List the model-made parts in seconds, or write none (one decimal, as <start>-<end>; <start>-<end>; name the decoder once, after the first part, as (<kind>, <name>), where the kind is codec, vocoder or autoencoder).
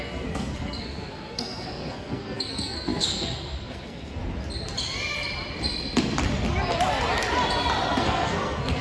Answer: 0.0-4.2 (codec, SNAC); 7.9-8.8